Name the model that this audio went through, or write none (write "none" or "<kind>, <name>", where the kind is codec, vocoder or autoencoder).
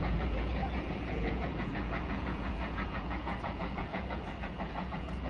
vocoder, Vocos